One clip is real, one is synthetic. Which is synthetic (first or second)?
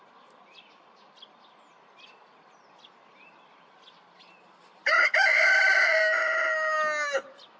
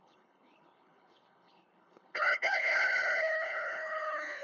second